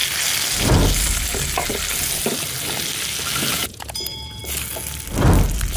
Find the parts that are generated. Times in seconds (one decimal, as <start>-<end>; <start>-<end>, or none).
3.5-4.4